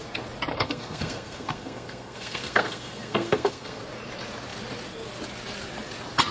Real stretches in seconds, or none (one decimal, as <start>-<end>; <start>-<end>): 0.0-0.5; 3.8-6.3